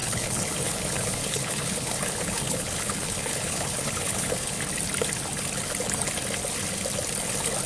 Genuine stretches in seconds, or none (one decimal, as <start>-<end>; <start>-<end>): 4.6-7.7